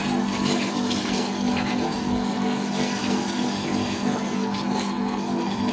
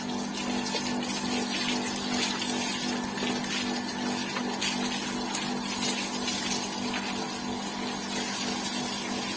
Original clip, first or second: second